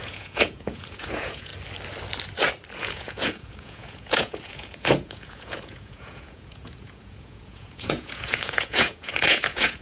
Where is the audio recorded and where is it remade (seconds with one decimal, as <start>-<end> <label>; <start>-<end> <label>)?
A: 0.0-1.5 remade; 1.5-2.8 recorded; 2.8-9.8 remade

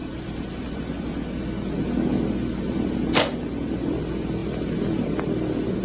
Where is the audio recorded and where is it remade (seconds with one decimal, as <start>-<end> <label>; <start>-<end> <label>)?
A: 0.0-1.3 remade; 1.3-2.1 recorded; 2.1-4.0 remade; 4.0-4.4 recorded; 4.4-4.9 remade; 4.9-5.8 recorded

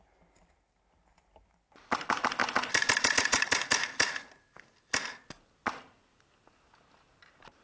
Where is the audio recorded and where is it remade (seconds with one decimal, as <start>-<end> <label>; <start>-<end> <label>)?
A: 0.0-7.6 recorded

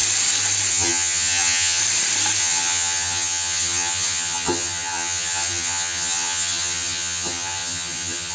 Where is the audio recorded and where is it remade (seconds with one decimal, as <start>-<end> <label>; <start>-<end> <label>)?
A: 0.0-0.7 recorded; 0.7-1.8 remade; 1.8-2.4 recorded; 2.4-8.3 remade

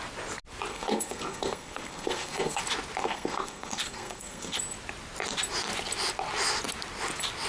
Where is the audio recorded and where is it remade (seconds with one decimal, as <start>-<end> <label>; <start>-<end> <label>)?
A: 0.0-0.7 recorded; 0.7-2.6 remade; 2.6-3.0 recorded; 3.0-4.6 remade; 4.6-7.5 recorded

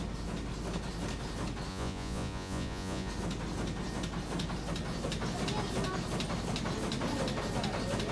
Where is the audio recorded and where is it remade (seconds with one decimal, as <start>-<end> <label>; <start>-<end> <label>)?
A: 0.0-1.7 recorded; 1.7-3.1 remade; 3.1-8.1 recorded

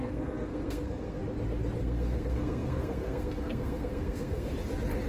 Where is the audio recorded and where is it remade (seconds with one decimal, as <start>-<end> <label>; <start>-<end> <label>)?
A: 0.0-1.2 remade; 1.2-1.8 recorded; 1.8-4.5 remade; 4.5-5.1 recorded